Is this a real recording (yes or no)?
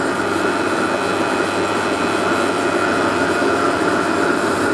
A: yes